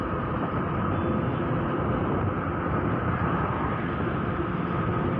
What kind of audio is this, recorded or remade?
recorded